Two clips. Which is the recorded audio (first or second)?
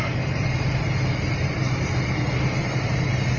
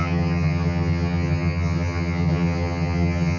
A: first